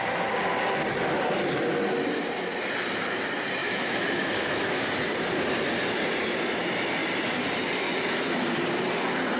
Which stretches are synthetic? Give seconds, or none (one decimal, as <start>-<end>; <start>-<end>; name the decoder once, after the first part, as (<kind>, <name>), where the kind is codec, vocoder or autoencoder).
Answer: 3.6-4.8 (autoencoder, DAC-VAE)